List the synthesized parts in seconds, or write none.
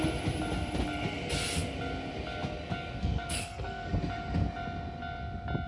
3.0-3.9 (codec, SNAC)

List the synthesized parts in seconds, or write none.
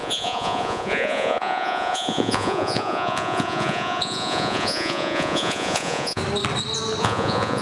0.0-6.2 (vocoder, Vocos); 7.0-7.6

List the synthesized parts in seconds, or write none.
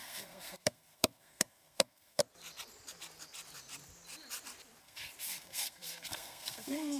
0.0-2.2 (codec, SNAC); 4.8-7.0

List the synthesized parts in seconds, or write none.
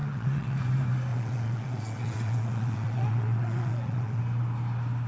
0.0-0.6 (vocoder, WaveNeXt); 1.1-4.2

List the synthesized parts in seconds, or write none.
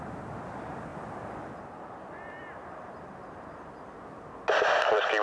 none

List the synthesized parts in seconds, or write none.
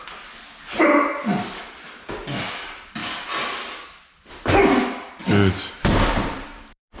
5.2-7.0 (vocoder, BigVGAN v2)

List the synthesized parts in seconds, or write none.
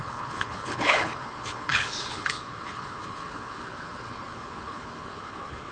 0.0-5.7 (codec, HILCodec)